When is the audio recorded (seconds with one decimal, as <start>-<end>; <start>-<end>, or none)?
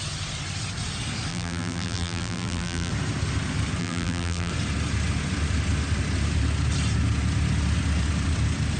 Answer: 0.0-1.3; 2.9-3.8; 4.5-8.8